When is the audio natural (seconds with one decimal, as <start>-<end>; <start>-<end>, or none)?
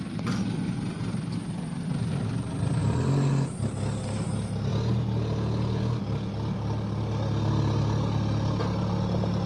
0.0-9.5